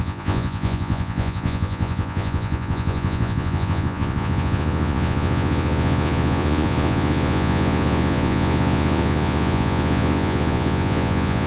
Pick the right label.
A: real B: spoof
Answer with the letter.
B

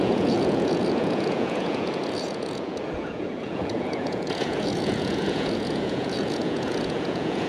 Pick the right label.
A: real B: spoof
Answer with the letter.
B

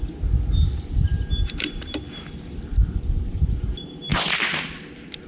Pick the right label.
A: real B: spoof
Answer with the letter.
A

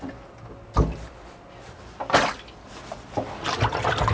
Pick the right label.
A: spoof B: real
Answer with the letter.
B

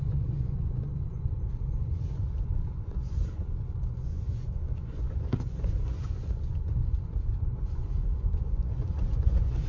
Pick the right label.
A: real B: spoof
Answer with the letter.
B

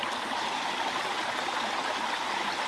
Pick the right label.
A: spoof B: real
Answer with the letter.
B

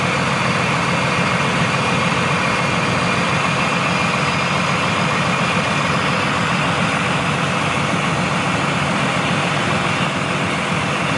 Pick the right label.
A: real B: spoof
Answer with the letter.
A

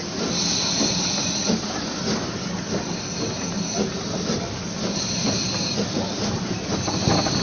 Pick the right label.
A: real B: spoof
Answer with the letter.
A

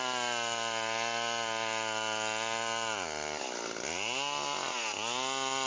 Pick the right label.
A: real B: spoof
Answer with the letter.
A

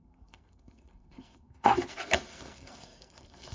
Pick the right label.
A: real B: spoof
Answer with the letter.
B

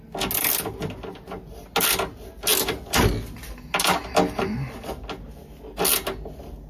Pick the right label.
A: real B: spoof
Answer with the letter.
A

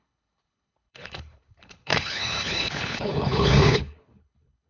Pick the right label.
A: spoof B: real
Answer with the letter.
A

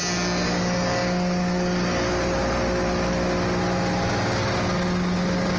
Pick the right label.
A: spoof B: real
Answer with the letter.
B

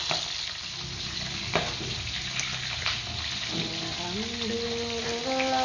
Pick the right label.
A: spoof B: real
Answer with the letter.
B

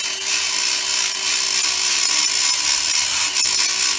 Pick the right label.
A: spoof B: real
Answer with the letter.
B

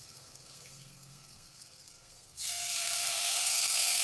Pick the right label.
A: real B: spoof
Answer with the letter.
B